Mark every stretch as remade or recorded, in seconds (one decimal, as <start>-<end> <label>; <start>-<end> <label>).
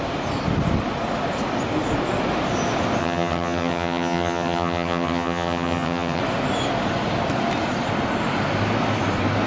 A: 0.0-3.0 recorded; 3.0-6.2 remade; 6.2-9.5 recorded